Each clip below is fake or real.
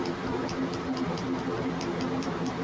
real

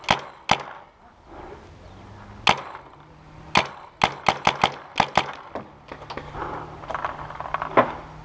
real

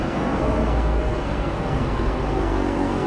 fake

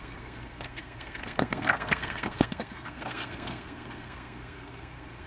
fake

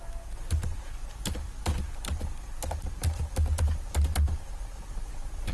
real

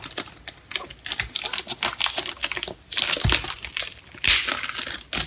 real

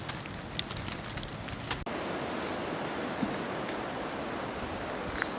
real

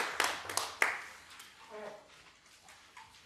real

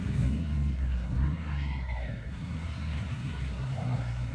fake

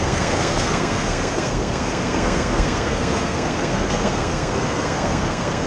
fake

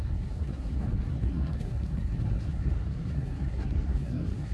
fake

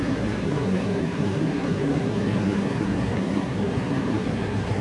fake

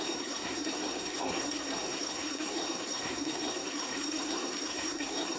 fake